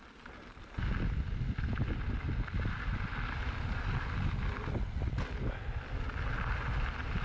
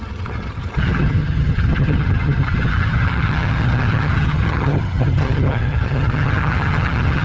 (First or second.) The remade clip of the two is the second